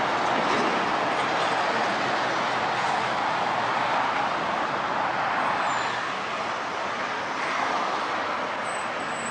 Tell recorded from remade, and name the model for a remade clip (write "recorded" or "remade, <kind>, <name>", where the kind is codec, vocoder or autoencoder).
recorded